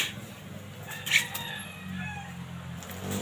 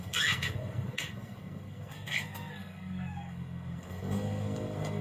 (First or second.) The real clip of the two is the first